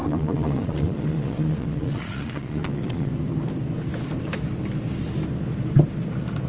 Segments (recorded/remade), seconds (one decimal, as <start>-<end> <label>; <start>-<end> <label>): 0.0-3.1 remade; 3.1-6.5 recorded